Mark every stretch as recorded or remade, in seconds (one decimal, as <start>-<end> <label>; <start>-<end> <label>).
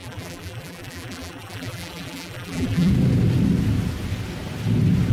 0.0-2.9 remade; 2.9-5.1 recorded